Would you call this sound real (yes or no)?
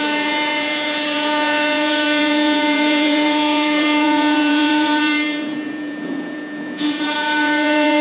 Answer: no